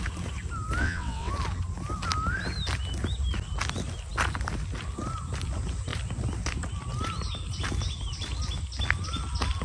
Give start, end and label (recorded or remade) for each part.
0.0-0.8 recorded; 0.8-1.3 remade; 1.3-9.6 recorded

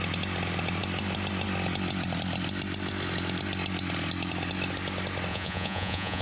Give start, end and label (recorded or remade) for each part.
0.0-5.3 recorded; 5.3-6.2 remade

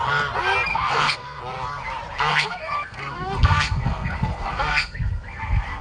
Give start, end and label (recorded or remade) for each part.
0.0-0.7 recorded; 0.7-1.4 remade; 1.4-2.3 recorded; 2.3-5.8 remade

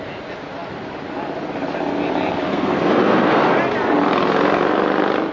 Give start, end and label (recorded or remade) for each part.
0.0-2.5 recorded; 2.5-3.4 remade; 3.4-5.3 recorded

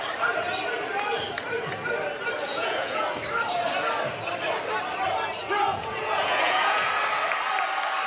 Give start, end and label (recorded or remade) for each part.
0.0-2.5 recorded; 2.5-3.1 remade; 3.1-5.7 recorded; 5.7-6.9 remade; 6.9-8.1 recorded

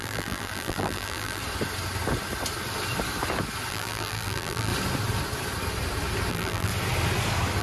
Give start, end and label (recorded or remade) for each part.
0.0-1.4 remade; 1.4-3.7 recorded; 3.7-4.7 remade; 4.7-6.3 recorded; 6.3-6.7 remade; 6.7-7.6 recorded

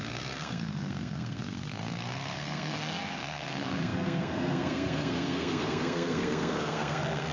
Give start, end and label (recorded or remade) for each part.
0.0-7.3 remade